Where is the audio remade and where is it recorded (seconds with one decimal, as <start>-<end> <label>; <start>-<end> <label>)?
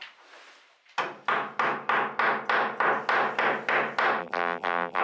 0.0-4.2 recorded; 4.2-5.0 remade